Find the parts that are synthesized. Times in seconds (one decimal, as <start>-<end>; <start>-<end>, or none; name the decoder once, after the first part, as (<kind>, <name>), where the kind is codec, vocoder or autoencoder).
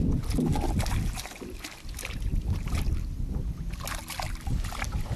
none